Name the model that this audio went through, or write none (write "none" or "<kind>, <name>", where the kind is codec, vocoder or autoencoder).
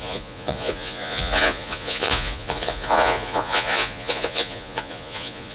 vocoder, Vocos